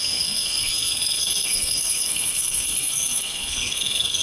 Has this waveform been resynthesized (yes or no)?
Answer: yes